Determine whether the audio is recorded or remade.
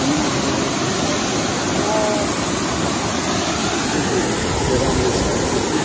recorded